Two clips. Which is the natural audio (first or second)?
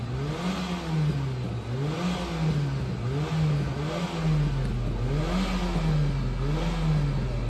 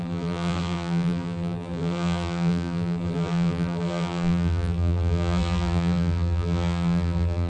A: first